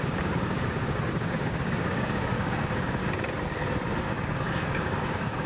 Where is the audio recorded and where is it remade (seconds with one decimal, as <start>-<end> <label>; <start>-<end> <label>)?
0.0-3.0 remade; 3.0-4.0 recorded; 4.0-5.5 remade